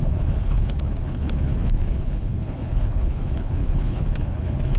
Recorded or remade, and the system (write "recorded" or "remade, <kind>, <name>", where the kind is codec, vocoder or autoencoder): remade, codec, HILCodec